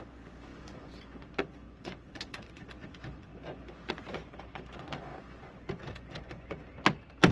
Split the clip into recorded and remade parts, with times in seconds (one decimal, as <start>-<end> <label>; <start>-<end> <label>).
0.0-6.7 remade; 6.7-7.3 recorded

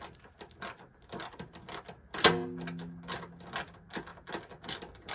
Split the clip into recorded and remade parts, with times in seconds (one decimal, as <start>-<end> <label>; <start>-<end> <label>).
0.0-5.1 recorded

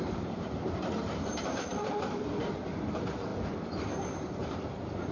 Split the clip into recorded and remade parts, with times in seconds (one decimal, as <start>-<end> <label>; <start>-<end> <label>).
0.0-5.1 remade